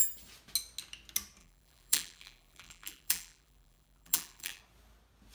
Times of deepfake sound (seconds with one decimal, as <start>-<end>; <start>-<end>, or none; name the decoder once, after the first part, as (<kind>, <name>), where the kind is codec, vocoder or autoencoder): 1.4-4.6 (vocoder, BigVGAN v2)